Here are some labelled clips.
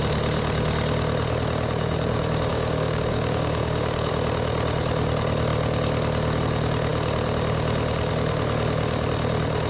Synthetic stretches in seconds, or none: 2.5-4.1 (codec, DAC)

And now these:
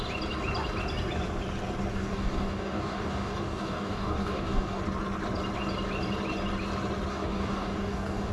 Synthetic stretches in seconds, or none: 1.9-4.8 (codec, DAC); 7.1-8.3

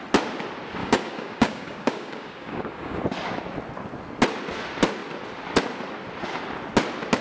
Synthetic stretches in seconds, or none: 0.8-3.0 (codec, DAC)

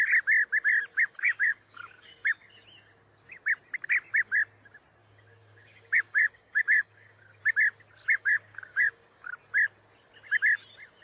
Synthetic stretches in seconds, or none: 0.9-2.4 (codec, DAC); 5.0-7.4; 8.0-9.3

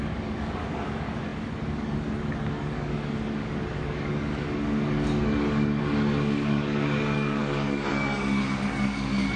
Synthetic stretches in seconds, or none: 0.0-9.4 (codec, DAC)